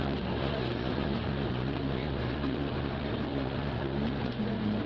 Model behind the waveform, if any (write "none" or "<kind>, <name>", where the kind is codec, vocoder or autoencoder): vocoder, Vocos